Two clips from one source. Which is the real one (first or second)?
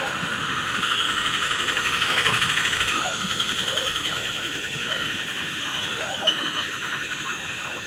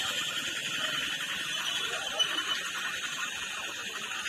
second